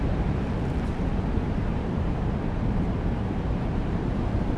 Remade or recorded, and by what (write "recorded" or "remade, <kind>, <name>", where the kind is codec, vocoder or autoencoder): remade, vocoder, BigVGAN v2